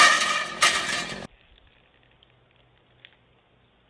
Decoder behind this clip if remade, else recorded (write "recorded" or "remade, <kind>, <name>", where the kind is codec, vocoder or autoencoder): recorded